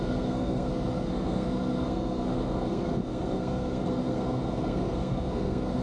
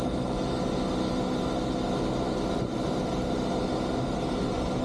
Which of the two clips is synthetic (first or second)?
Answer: first